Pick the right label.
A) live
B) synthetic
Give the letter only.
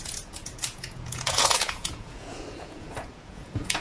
B